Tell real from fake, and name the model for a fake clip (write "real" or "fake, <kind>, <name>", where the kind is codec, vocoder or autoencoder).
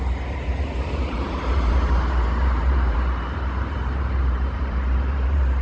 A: fake, vocoder, BigVGAN v2